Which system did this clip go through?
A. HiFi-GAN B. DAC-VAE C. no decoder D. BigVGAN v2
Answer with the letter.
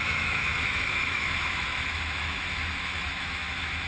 B